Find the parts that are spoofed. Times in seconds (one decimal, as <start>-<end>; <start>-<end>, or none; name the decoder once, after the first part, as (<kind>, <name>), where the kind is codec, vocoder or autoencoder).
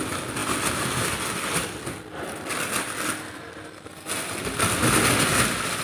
none